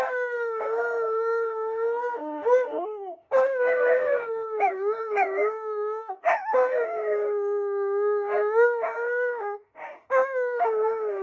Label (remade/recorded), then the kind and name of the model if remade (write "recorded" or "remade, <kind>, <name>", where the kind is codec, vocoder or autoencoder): remade, autoencoder, DAC-VAE